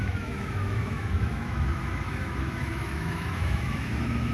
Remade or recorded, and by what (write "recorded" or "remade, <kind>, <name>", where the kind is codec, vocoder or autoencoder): remade, autoencoder, DAC-VAE